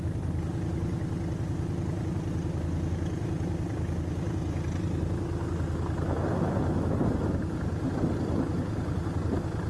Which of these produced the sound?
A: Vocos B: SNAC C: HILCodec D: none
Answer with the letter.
D